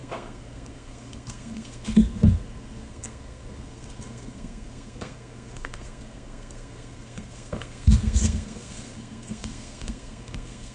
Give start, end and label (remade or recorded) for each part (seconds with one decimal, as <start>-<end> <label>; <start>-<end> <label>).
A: 0.0-10.7 remade